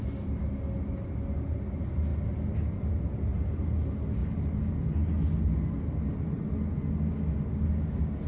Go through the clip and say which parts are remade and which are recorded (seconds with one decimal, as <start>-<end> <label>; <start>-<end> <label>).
0.0-8.3 recorded